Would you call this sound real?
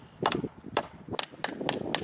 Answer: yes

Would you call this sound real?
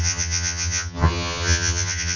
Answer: no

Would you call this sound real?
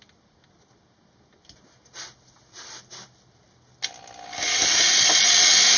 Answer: yes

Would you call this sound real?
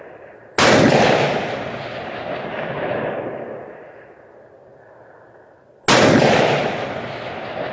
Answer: yes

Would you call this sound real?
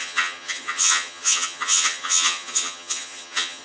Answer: no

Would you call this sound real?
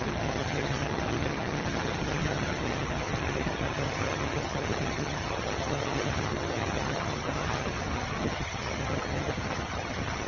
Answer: no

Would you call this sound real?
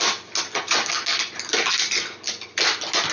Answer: yes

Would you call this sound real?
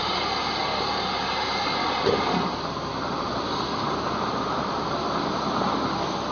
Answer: yes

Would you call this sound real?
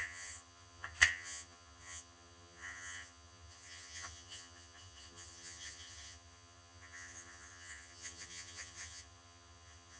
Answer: no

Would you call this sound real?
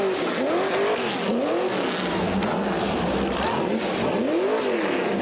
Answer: yes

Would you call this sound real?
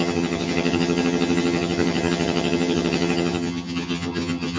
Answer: no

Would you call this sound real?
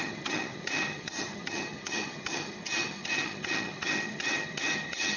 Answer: no